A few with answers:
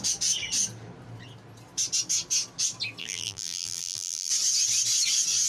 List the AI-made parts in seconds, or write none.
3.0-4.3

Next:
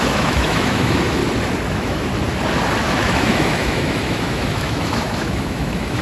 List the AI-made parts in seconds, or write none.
0.0-1.2; 1.7-2.1; 2.8-6.0